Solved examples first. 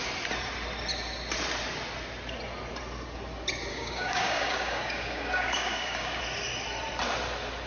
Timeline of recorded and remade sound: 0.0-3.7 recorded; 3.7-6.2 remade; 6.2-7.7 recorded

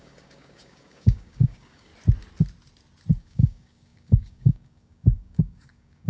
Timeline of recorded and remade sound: 0.0-1.9 remade; 1.9-3.2 recorded; 3.2-6.1 remade

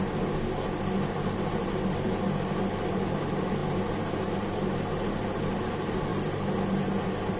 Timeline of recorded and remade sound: 0.0-7.4 recorded